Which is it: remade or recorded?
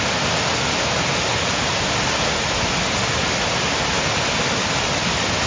recorded